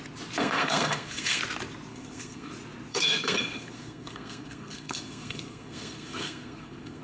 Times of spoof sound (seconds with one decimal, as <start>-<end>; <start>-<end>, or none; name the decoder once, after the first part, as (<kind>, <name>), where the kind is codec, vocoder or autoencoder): 0.4-1.4 (codec, SNAC); 1.9-2.5; 2.9-7.0